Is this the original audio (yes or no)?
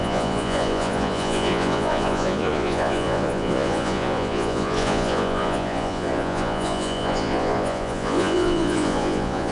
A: no